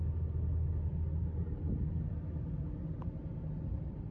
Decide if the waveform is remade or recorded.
recorded